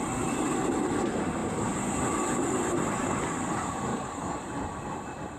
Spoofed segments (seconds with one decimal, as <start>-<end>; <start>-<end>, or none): 3.9-4.4